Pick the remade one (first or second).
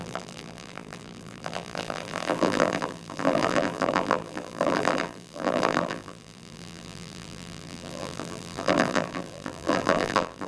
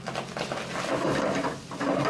first